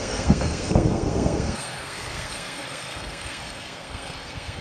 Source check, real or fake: fake